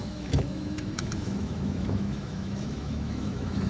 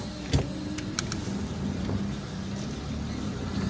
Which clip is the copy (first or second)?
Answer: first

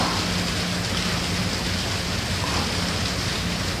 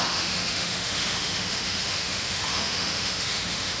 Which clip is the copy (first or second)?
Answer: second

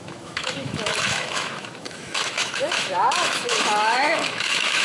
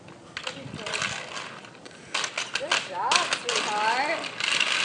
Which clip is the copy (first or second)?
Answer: first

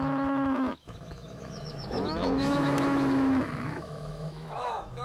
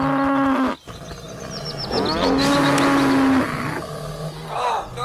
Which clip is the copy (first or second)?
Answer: first